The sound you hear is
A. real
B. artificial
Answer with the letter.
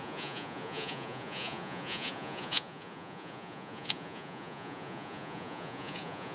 B